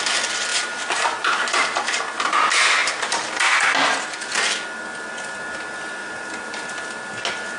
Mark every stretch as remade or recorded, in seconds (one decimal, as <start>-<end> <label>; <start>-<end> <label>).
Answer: 0.0-0.5 recorded; 0.5-2.0 remade; 2.0-6.0 recorded; 6.0-6.5 remade; 6.5-7.6 recorded